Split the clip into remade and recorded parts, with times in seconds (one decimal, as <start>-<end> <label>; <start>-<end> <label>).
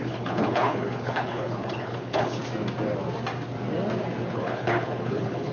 0.0-2.4 remade; 2.4-4.3 recorded; 4.3-5.5 remade